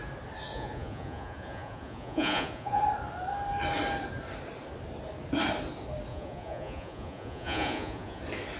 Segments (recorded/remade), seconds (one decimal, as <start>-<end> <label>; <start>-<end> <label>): 0.0-0.5 recorded; 0.5-2.8 remade; 2.8-6.1 recorded; 6.1-8.2 remade; 8.2-8.6 recorded